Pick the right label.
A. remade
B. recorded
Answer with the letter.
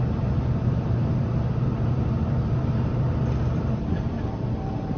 A